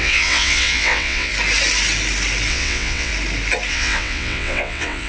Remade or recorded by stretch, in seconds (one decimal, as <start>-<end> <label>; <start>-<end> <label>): 0.0-1.3 remade; 1.3-2.5 recorded; 2.5-3.1 remade; 3.1-3.7 recorded; 3.7-5.1 remade

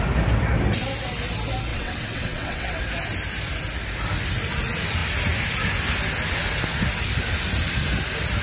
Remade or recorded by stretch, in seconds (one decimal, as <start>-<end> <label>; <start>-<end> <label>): 0.0-1.7 recorded; 1.7-2.8 remade; 2.8-8.4 recorded